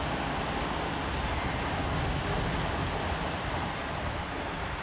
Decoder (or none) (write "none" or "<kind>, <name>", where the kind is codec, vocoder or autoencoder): none